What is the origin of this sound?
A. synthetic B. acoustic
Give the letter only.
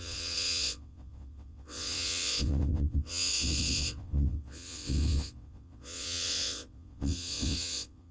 A